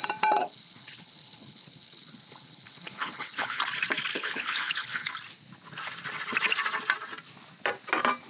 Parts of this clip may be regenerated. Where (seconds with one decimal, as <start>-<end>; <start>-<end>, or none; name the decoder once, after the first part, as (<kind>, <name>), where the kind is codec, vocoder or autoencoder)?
0.4-3.6 (codec, HILCodec); 4.1-5.1